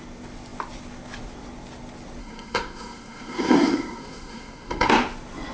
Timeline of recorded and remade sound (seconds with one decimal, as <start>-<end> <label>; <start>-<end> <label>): 0.0-2.2 recorded; 2.2-4.9 remade; 4.9-5.5 recorded